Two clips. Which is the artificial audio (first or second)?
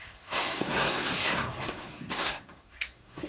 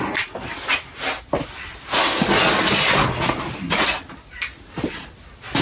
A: first